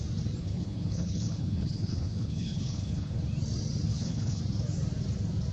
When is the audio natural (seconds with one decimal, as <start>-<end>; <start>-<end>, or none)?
0.0-0.4; 3.2-3.9; 4.4-5.5